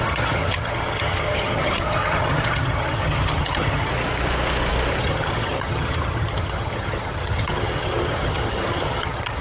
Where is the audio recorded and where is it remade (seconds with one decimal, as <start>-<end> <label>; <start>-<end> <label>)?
0.0-3.9 remade; 3.9-5.0 recorded; 5.0-9.4 remade